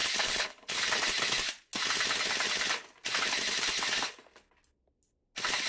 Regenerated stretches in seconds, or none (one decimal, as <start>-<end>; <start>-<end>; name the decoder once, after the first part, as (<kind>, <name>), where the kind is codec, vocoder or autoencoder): 0.0-0.8 (codec, HILCodec)